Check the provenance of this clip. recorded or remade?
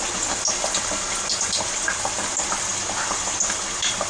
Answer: recorded